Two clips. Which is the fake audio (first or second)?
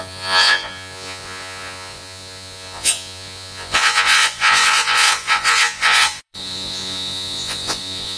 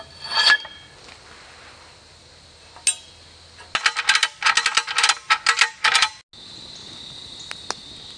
first